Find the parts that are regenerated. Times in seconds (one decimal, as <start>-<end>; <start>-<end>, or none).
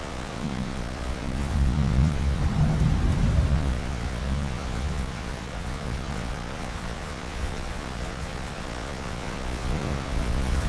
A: 0.0-2.4; 3.5-10.7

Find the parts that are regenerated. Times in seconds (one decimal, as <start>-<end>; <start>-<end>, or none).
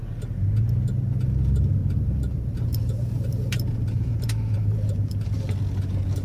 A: 1.8-5.4